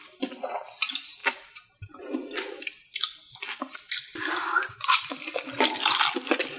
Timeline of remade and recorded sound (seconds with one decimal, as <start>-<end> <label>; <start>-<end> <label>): 0.0-1.2 recorded; 1.2-4.7 remade; 4.7-6.6 recorded